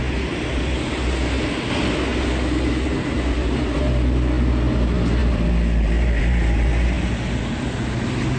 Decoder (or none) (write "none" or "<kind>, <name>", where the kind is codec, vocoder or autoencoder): none